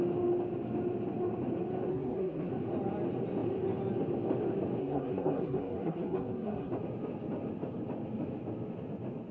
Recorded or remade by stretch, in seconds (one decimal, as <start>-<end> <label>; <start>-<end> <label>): 0.0-1.9 recorded; 1.9-2.5 remade; 2.5-4.8 recorded; 4.8-6.7 remade; 6.7-9.3 recorded